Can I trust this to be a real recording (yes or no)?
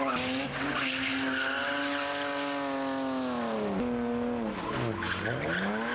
yes